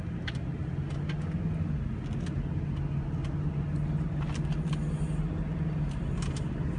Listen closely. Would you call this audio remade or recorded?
recorded